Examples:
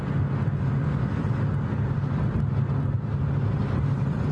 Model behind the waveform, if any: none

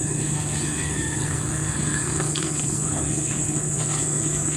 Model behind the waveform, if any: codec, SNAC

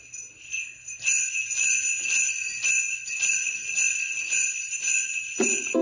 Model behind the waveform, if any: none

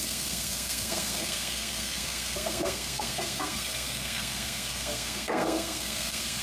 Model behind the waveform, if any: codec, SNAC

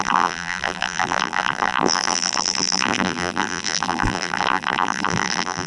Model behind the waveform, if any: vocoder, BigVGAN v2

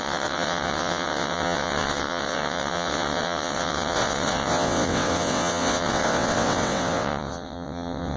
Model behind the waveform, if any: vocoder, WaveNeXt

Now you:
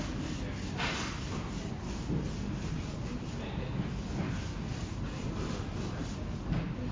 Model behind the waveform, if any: none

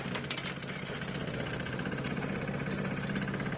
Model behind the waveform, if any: none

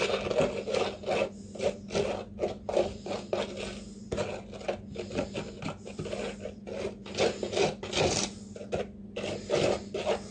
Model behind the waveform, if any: none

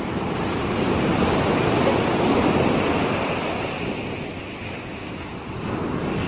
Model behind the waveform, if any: none